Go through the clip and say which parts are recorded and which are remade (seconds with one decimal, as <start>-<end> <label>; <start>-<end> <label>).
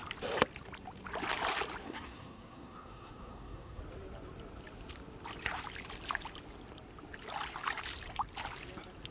0.0-1.8 recorded; 1.8-3.8 remade; 3.8-9.1 recorded